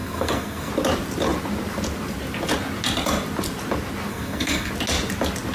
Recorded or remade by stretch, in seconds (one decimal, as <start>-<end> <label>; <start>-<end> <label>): 0.0-0.7 remade; 0.7-4.1 recorded; 4.1-4.7 remade; 4.7-5.5 recorded